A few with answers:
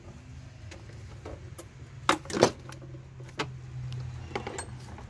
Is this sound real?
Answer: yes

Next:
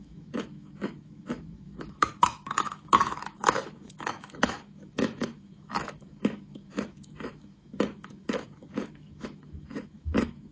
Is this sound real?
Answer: no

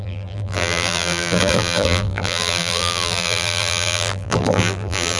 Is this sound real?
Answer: no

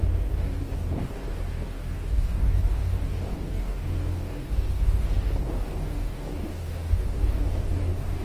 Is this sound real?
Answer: no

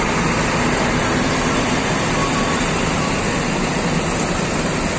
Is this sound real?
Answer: yes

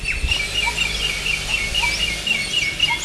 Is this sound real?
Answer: yes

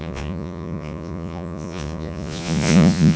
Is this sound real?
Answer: no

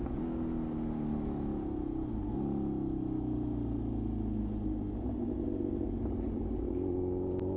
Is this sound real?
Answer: yes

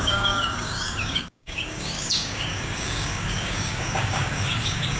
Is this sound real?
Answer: no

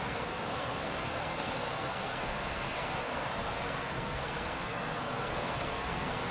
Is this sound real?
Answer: no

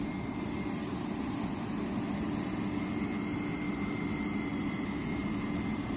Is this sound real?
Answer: yes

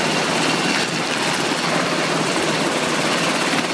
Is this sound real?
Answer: yes